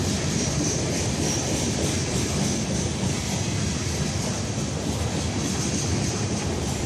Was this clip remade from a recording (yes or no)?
yes